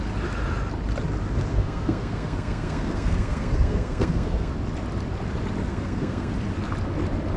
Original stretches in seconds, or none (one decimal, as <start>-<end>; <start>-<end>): 0.0-1.5; 4.5-5.7; 6.3-7.4